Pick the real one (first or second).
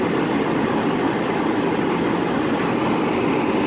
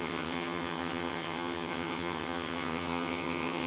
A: first